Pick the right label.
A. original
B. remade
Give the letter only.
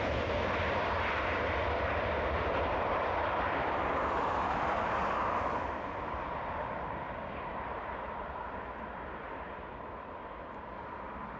B